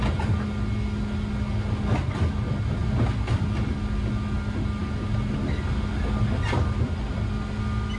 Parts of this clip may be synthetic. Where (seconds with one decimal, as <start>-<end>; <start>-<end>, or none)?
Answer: none